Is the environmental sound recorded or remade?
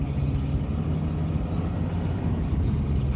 recorded